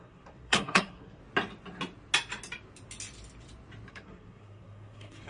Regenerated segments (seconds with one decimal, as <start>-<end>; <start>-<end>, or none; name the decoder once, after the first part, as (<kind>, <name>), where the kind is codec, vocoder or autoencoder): 0.0-1.2 (codec, SNAC); 3.9-5.3